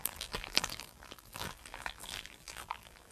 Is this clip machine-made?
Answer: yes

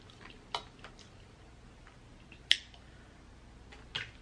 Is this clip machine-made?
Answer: no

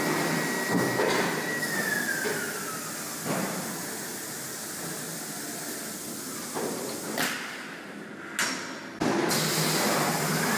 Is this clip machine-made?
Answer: no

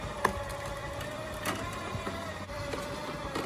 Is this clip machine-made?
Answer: no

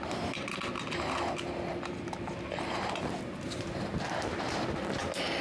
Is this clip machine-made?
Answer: no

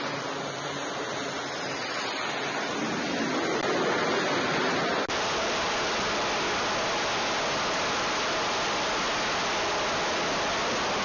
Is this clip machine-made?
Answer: no